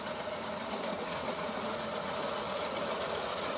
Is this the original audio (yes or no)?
no